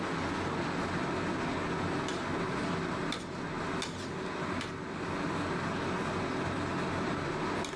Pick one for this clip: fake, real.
real